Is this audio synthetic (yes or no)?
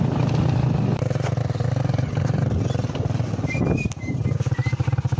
no